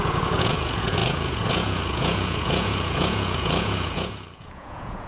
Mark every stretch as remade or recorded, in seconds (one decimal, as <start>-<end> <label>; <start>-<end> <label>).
0.0-5.1 remade